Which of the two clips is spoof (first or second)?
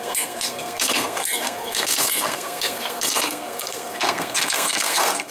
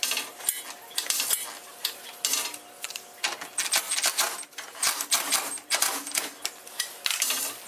first